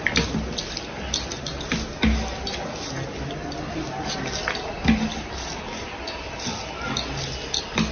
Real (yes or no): yes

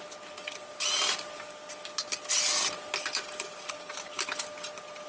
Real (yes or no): yes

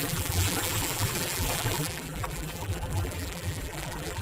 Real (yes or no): no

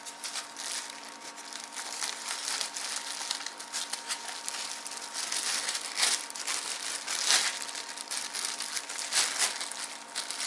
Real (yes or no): yes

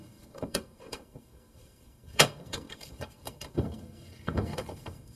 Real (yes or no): no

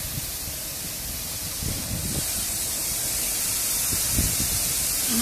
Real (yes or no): yes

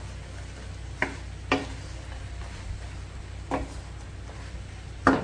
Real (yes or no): yes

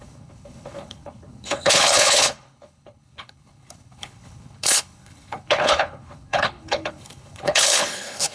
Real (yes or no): no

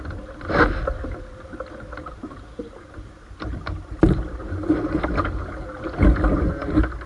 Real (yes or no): yes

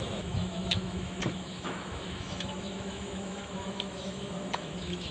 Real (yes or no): no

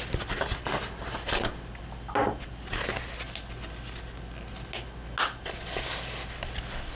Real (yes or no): yes